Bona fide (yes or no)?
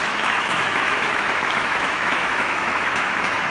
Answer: no